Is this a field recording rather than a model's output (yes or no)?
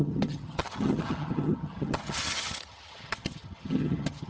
no